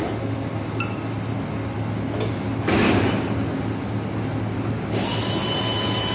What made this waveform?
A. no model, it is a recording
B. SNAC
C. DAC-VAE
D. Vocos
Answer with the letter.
A